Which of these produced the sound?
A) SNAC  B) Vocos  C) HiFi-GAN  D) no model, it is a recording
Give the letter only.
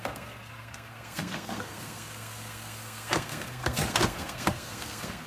A